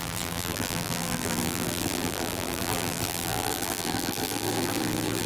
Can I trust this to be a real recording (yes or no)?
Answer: no